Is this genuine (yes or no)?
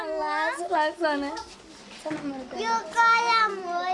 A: yes